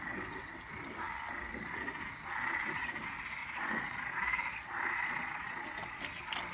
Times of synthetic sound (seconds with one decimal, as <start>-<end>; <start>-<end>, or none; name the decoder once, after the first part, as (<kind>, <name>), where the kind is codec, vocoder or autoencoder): 1.5-2.0 (vocoder, Vocos); 3.4-4.1; 4.5-6.0